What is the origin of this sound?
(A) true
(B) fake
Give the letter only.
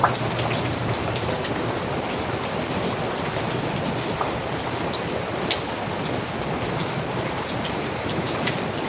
A